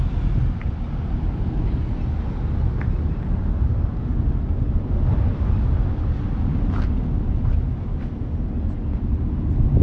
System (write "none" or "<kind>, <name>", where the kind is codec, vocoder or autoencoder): none